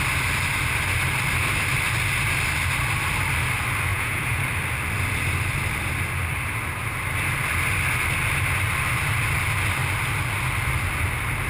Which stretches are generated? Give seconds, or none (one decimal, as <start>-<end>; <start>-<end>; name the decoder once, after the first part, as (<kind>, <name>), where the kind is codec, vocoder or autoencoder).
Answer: 3.9-4.4 (vocoder, Vocos)